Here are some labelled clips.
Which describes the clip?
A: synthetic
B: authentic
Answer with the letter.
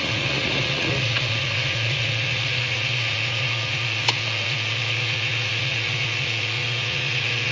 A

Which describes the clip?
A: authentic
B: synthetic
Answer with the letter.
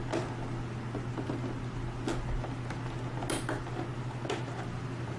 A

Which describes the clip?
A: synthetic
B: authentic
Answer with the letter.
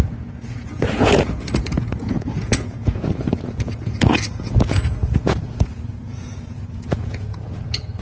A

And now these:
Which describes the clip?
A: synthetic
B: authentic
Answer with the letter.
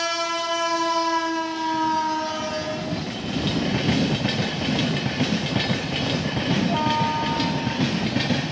B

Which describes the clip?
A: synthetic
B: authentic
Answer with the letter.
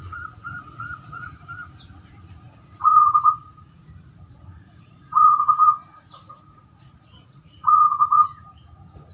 A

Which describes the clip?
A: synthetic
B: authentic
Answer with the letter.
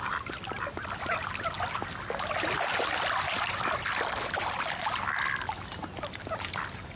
B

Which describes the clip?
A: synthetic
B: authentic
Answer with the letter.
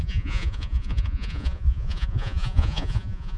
A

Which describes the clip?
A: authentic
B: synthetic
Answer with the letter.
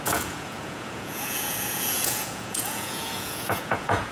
B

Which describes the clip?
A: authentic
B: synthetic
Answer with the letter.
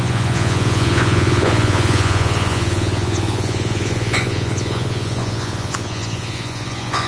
B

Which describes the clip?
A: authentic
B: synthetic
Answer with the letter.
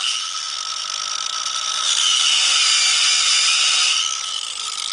A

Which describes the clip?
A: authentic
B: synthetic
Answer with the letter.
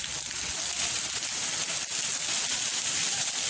A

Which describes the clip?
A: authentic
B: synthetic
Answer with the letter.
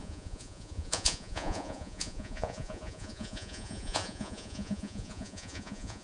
B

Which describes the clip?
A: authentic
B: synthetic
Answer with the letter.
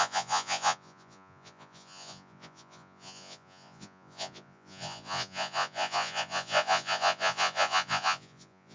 B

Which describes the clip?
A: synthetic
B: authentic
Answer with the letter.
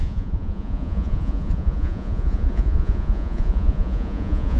A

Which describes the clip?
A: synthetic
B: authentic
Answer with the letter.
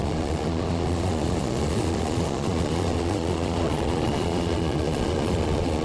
A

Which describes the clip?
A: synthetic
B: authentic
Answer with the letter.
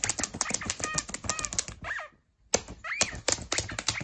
B